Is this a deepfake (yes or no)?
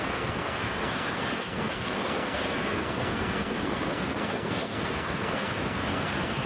yes